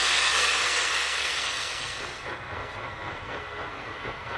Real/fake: fake